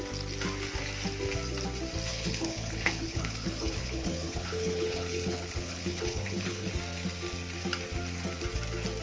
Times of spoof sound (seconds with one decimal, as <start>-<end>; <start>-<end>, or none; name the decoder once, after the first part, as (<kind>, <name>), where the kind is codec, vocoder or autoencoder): 2.1-6.7 (codec, HILCodec)